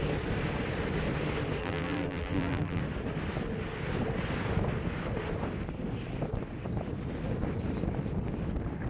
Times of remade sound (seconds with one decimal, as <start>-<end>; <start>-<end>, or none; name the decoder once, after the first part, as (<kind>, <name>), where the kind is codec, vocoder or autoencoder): 1.6-2.8 (vocoder, BigVGAN v2)